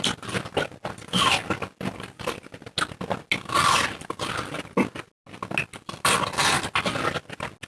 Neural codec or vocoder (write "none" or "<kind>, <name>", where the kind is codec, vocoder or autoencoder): none